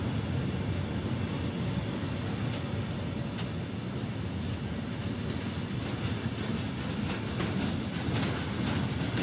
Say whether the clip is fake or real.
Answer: real